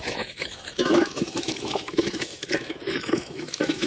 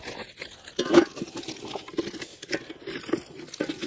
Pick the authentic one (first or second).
second